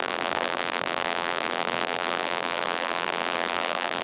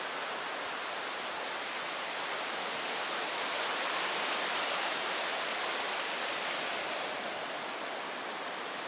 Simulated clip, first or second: first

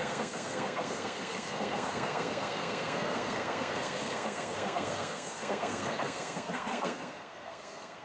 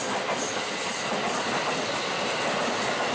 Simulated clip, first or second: first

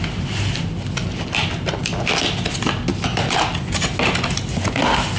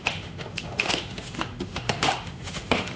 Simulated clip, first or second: second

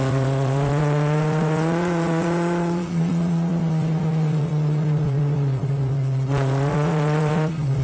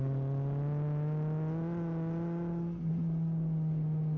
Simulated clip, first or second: first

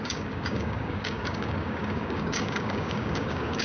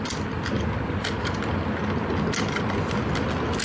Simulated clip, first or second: first